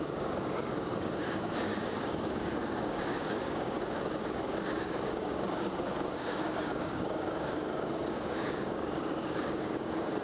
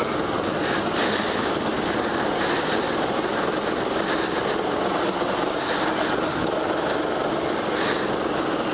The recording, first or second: second